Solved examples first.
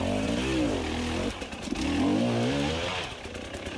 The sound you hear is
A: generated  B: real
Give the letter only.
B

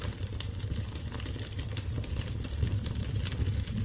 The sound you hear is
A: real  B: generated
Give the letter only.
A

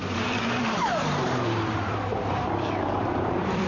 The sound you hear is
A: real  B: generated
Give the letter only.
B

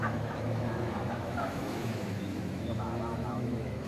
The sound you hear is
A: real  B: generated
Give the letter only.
B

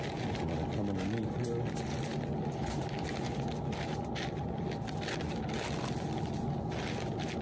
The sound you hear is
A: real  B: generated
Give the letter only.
A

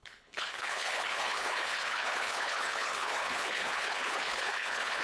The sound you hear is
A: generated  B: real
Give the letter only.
A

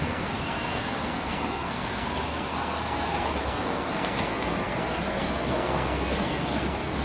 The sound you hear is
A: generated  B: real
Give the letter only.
A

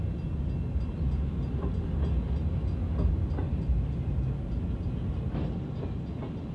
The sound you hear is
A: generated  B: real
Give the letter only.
B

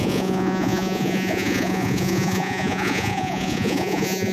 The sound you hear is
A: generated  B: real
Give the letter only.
A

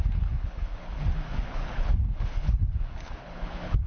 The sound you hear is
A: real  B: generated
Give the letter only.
B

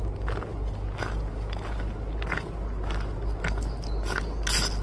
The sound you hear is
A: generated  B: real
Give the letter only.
B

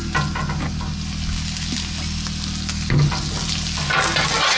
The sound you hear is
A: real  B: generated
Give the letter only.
A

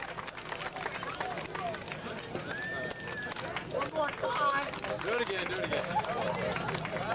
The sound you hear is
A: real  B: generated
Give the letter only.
A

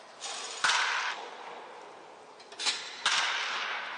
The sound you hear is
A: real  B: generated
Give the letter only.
A